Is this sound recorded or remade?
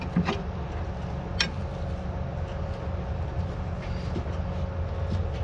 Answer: recorded